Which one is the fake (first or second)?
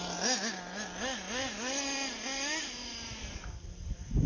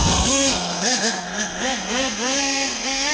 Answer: second